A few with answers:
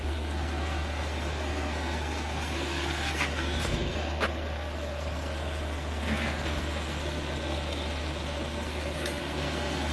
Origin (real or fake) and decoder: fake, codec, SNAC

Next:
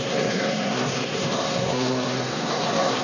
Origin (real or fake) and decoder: fake, codec, SNAC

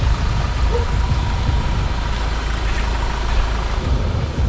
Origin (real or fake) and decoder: real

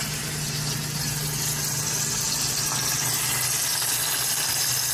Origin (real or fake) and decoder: real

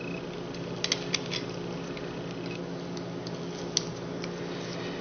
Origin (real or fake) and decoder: real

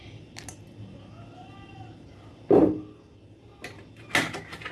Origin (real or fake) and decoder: real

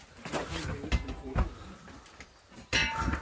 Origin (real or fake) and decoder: real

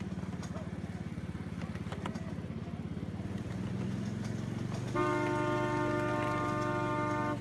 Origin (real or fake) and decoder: real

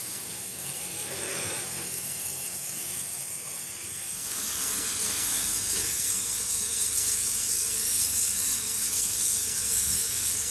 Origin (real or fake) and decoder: fake, codec, SNAC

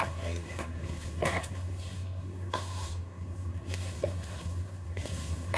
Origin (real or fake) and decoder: fake, codec, SNAC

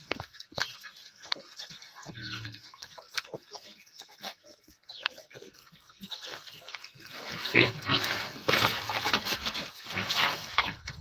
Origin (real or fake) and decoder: fake, codec, SNAC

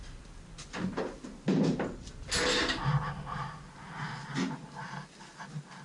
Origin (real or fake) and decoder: real